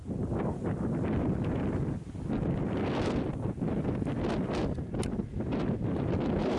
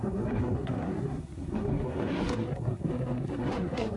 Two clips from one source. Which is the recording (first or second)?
first